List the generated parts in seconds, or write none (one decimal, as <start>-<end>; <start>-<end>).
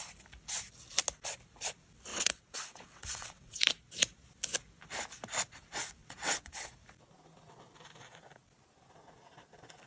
2.1-3.6; 6.0-6.7